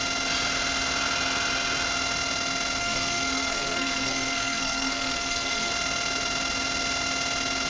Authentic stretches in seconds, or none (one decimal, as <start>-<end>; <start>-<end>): 0.0-2.8; 5.7-7.7